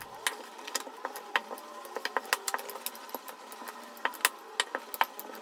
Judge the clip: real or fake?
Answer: real